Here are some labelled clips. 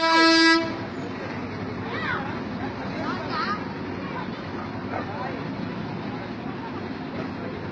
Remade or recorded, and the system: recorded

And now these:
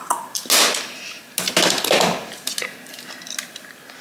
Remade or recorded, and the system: recorded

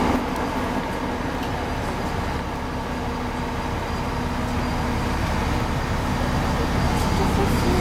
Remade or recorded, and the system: recorded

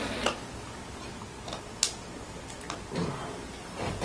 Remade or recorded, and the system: recorded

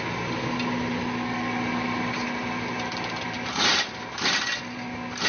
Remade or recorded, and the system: recorded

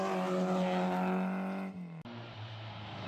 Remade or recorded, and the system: recorded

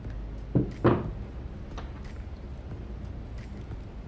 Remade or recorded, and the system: recorded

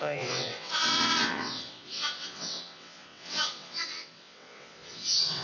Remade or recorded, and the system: remade, vocoder, WaveNeXt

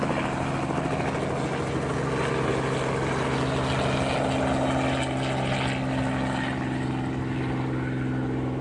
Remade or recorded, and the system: recorded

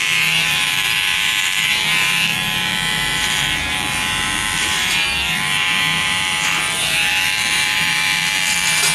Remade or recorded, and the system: remade, vocoder, BigVGAN v2